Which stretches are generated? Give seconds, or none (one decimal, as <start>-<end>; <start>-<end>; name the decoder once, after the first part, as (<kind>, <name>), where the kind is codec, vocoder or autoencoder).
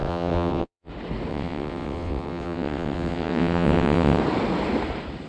0.0-0.9 (vocoder, WaveNeXt); 1.3-4.2